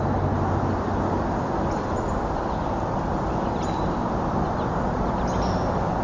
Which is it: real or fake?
real